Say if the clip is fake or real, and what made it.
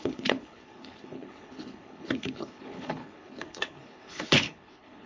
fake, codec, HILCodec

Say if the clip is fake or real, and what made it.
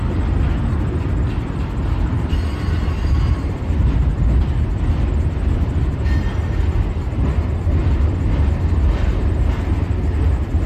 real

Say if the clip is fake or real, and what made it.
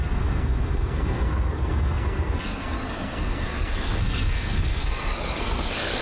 fake, codec, SNAC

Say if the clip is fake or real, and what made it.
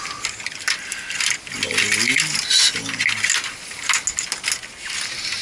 real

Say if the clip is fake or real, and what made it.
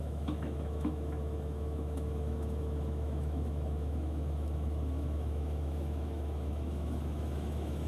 fake, autoencoder, DAC-VAE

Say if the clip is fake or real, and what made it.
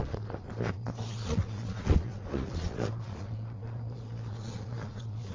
fake, vocoder, Vocos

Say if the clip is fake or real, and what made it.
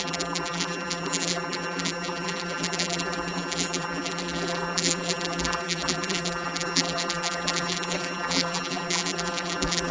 fake, vocoder, BigVGAN v2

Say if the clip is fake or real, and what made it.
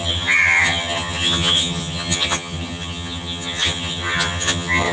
fake, vocoder, HiFi-GAN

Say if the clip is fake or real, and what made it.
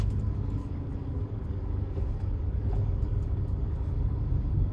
fake, codec, DAC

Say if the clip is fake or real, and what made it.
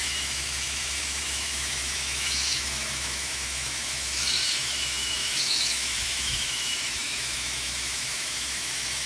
fake, autoencoder, DAC-VAE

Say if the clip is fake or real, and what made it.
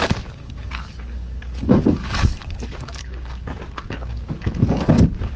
fake, codec, DAC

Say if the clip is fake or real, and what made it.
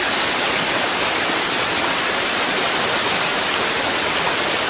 real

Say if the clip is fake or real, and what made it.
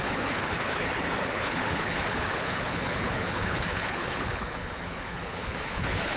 fake, codec, HILCodec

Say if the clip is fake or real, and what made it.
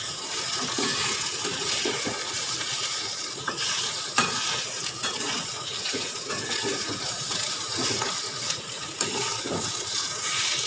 fake, vocoder, Vocos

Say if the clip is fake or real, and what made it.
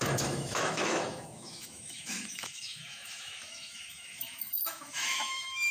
fake, autoencoder, DAC-VAE